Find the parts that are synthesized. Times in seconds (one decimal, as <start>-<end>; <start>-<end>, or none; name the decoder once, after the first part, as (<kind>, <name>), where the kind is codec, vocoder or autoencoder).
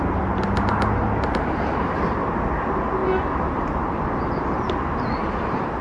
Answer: none